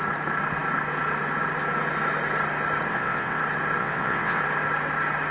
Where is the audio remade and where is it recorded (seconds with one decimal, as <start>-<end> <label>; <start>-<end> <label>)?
0.0-2.9 recorded; 2.9-3.4 remade; 3.4-3.8 recorded; 3.8-4.4 remade; 4.4-5.3 recorded

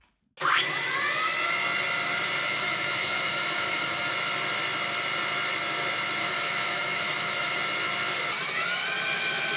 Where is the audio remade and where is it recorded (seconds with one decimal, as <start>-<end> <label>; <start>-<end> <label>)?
0.0-2.6 recorded; 2.6-4.1 remade; 4.1-6.2 recorded; 6.2-7.6 remade; 7.6-9.6 recorded